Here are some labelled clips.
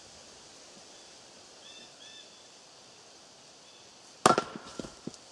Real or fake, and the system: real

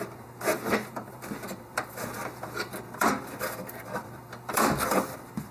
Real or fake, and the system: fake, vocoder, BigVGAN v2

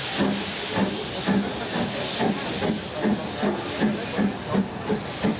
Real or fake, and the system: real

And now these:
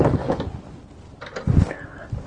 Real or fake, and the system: real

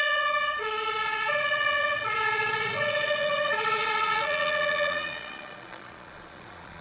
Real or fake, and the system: fake, vocoder, Vocos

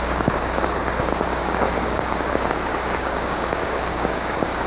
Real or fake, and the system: fake, codec, DAC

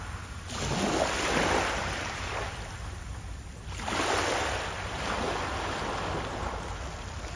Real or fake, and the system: real